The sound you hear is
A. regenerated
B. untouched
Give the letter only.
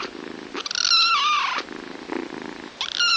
B